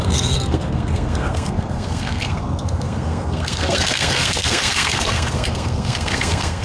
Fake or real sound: fake